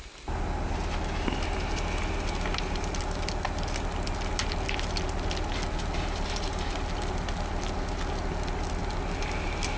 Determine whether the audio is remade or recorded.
recorded